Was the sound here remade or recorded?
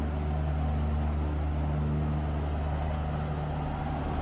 recorded